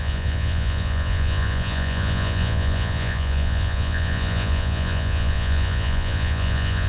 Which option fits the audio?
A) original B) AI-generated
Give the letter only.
B